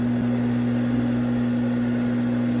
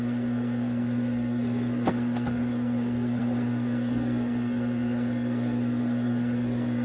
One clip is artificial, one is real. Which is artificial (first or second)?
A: second